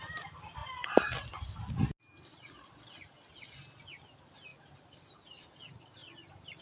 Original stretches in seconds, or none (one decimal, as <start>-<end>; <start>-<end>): 0.0-6.0